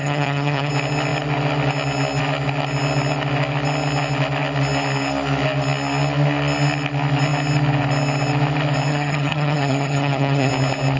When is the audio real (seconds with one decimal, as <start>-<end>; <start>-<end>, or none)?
0.7-8.9; 10.5-11.0